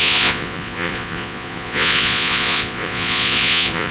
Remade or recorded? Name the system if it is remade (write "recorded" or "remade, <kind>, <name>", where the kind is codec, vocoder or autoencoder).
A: remade, vocoder, Vocos